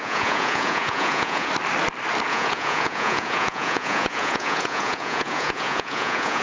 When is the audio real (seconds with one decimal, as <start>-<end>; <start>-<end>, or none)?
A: 1.5-2.3